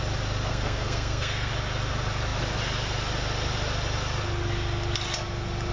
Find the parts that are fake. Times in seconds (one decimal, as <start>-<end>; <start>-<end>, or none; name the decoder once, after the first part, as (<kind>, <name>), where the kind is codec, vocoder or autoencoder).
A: 0.5-1.5 (codec, SNAC)